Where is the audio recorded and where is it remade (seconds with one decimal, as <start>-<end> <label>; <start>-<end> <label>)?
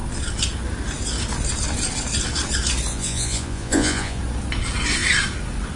0.0-2.9 recorded; 2.9-4.2 remade; 4.2-5.8 recorded